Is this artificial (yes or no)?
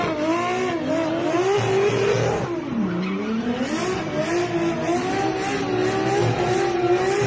no